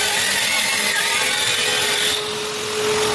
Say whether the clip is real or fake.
real